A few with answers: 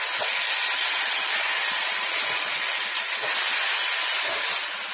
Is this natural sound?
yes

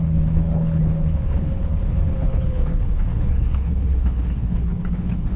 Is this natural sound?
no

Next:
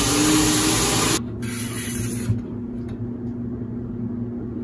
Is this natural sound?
yes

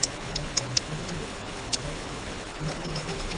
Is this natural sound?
no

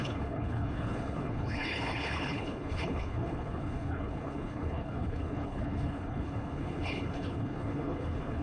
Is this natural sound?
no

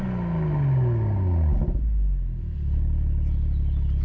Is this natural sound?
yes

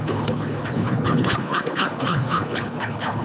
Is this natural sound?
no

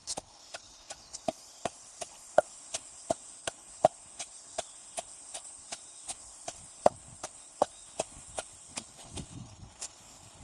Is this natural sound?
no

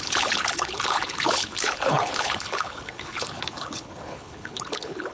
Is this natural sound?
no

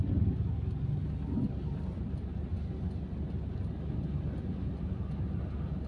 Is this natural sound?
yes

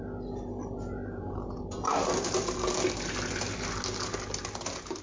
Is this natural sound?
yes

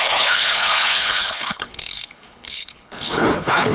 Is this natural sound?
no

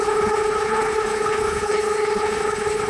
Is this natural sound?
no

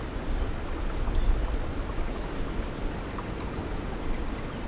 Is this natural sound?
yes